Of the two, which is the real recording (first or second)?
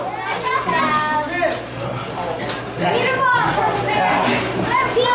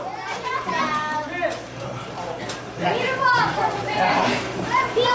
first